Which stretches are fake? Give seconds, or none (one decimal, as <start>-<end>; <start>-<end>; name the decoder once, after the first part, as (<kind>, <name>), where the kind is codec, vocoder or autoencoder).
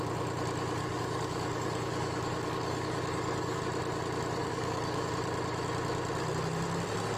0.8-3.6 (codec, DAC); 4.4-5.1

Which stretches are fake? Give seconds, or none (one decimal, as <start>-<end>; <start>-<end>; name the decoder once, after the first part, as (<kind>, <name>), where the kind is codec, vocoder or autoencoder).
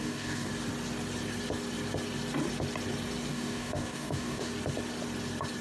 0.0-0.5 (codec, DAC); 3.3-4.5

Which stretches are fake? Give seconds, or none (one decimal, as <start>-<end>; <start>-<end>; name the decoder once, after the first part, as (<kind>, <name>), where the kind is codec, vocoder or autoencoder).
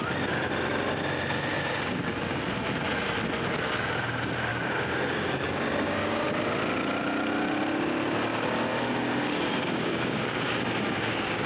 1.5-2.4 (codec, DAC); 4.5-6.3; 8.7-11.5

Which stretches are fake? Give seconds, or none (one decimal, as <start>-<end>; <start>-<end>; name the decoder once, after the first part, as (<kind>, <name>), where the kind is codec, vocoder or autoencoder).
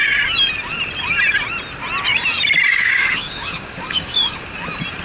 2.7-4.4 (codec, DAC)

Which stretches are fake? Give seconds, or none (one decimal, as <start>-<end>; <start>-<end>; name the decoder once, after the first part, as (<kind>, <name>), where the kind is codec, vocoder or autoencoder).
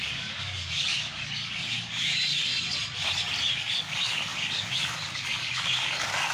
0.0-2.5 (codec, DAC); 3.5-6.3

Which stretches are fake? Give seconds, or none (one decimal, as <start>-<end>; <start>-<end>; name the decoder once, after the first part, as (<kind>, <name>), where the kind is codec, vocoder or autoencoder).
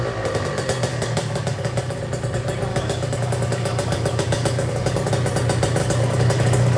0.9-2.0 (codec, DAC); 2.7-5.1; 5.8-6.8